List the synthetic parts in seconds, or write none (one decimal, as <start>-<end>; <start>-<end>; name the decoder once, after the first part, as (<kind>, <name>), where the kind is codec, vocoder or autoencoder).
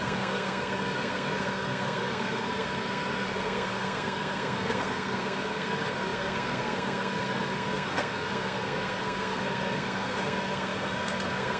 0.0-11.6 (codec, SNAC)